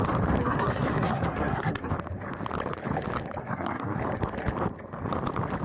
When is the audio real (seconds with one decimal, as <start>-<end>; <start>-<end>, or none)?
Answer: 0.0-0.4; 1.9-3.4; 4.0-5.6